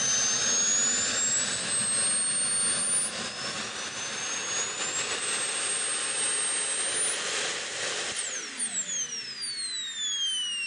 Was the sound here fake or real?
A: real